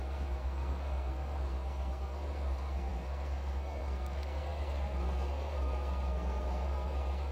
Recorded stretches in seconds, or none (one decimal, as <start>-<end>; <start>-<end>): none